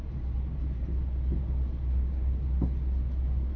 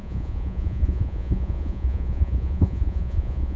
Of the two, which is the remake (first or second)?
second